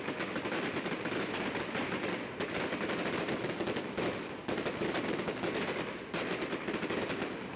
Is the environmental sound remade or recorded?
recorded